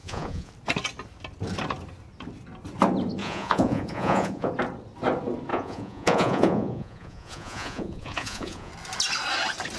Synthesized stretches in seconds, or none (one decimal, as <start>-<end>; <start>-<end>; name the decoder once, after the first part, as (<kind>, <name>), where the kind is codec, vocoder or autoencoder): 0.0-0.5 (vocoder, Vocos); 3.2-4.5; 5.5-8.7